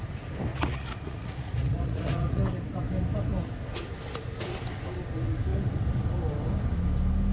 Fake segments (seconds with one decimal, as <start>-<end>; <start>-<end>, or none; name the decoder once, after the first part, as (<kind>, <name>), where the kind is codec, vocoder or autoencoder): 0.5-2.4 (vocoder, Vocos)